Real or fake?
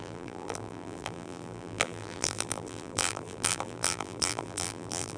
fake